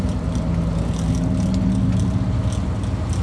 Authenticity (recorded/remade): recorded